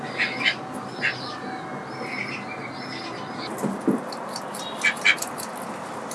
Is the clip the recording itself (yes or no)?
yes